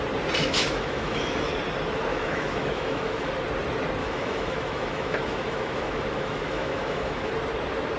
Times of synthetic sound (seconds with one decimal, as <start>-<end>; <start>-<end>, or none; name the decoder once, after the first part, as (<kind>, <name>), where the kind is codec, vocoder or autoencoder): 0.4-1.5 (autoencoder, DAC-VAE); 2.1-3.3; 4.0-7.3